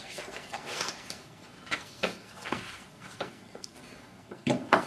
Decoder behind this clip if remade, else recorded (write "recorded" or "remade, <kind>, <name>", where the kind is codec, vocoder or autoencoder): remade, codec, SNAC